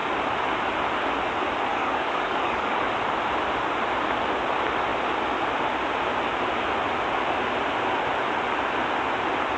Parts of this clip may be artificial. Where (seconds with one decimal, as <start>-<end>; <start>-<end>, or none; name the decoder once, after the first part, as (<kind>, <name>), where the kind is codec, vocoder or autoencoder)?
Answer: 1.7-2.8 (codec, DAC)